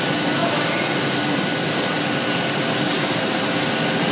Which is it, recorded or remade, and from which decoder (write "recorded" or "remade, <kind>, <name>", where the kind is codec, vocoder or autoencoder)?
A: recorded